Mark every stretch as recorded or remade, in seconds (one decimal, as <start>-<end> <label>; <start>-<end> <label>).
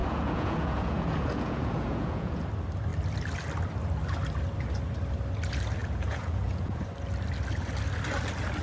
0.0-2.5 remade; 2.5-5.8 recorded; 5.8-6.8 remade; 6.8-8.6 recorded